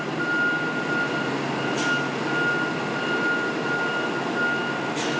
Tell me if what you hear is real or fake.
real